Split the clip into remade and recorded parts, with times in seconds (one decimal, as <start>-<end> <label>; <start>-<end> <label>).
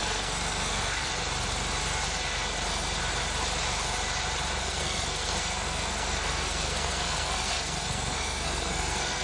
0.0-1.1 remade; 1.1-4.6 recorded; 4.6-9.2 remade